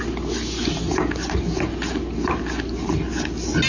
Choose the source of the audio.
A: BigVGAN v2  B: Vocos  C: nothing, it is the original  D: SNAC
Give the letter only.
C